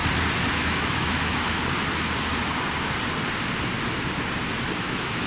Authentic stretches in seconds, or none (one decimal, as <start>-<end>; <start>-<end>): 0.0-0.5; 1.6-4.8